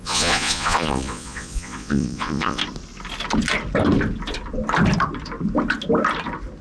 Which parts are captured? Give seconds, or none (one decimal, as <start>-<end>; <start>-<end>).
2.6-6.6